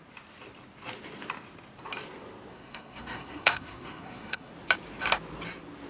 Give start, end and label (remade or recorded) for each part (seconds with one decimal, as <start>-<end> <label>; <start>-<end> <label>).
0.0-2.5 recorded; 2.5-4.5 remade; 4.5-5.9 recorded

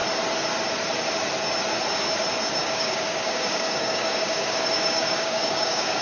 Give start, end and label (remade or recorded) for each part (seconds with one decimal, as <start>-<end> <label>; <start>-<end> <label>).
0.0-2.6 recorded; 2.6-6.0 remade